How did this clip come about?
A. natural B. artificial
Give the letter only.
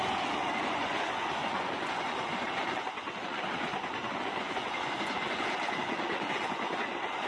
B